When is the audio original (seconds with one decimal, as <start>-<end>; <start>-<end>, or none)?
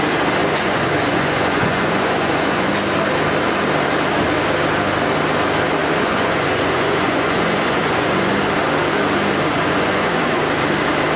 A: 0.0-0.4; 2.7-5.8; 8.4-9.5; 10.4-11.2